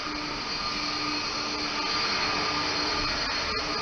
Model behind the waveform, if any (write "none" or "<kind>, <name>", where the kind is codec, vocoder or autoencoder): none